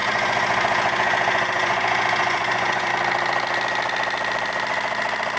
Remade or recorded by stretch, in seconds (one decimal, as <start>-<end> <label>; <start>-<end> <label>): 0.0-2.9 remade; 2.9-5.4 recorded